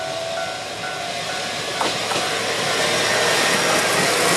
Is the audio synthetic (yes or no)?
no